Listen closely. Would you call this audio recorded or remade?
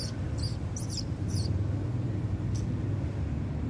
recorded